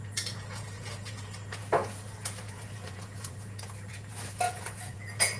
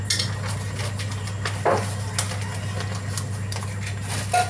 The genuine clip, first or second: second